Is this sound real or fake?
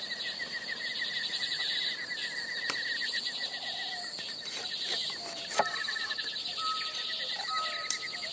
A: real